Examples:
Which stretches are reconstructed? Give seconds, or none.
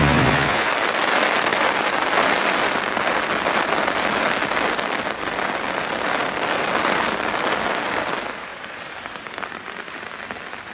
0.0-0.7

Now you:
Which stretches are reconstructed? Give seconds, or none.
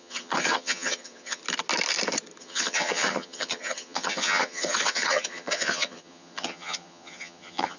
0.0-1.4; 2.4-7.8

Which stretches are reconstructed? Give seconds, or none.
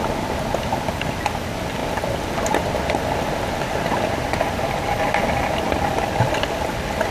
none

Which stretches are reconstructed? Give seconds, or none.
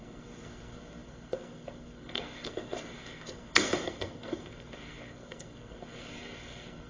0.0-6.9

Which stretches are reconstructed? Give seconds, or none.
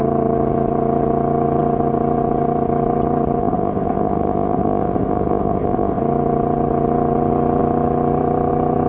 3.4-6.0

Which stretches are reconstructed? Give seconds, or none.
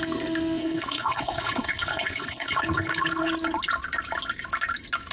0.6-3.3